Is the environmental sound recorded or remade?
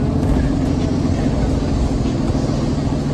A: recorded